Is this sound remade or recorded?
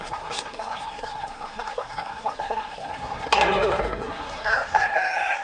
remade